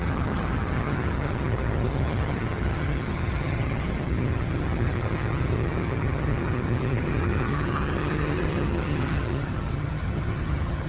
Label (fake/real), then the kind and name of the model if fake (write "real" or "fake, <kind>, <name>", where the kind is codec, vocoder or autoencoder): fake, vocoder, HiFi-GAN